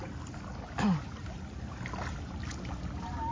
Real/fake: real